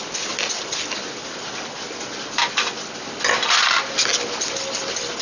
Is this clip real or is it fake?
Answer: real